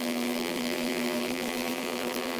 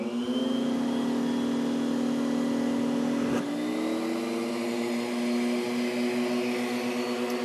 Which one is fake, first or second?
first